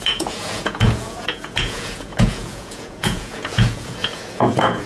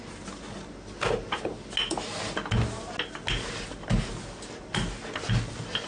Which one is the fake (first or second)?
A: first